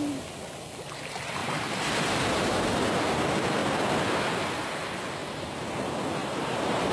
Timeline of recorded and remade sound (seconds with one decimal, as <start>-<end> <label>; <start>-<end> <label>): 0.0-1.4 recorded; 1.4-2.8 remade; 2.8-5.2 recorded; 5.2-5.7 remade; 5.7-6.2 recorded; 6.2-6.9 remade